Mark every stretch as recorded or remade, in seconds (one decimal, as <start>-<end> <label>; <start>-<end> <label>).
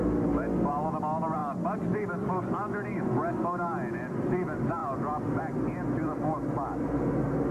0.0-1.4 recorded; 1.4-2.5 remade; 2.5-7.5 recorded